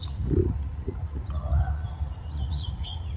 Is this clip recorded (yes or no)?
no